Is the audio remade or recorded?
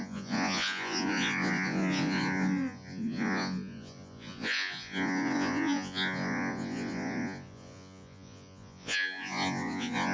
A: remade